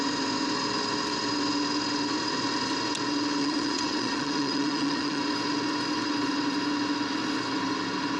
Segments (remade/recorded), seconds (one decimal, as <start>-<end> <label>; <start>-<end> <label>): 0.0-3.4 recorded; 3.4-5.2 remade; 5.2-8.2 recorded